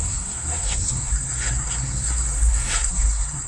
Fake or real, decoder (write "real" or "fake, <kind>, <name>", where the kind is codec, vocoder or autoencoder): fake, codec, SNAC